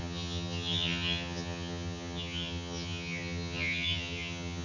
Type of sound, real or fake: fake